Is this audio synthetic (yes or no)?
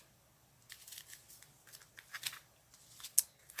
no